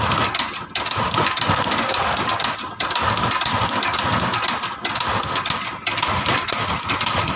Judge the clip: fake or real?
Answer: real